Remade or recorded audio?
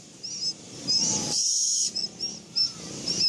recorded